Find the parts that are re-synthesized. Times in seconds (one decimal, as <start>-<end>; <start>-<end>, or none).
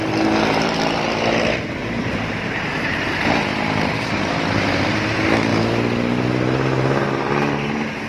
1.8-3.9